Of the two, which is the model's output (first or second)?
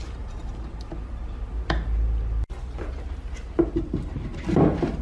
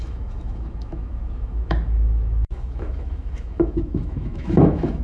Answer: second